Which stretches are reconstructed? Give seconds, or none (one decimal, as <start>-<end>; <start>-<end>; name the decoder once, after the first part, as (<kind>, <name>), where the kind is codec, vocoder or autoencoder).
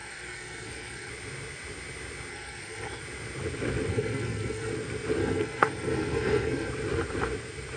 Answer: 0.0-1.1 (codec, SNAC); 2.3-3.0; 3.9-4.7; 5.2-6.7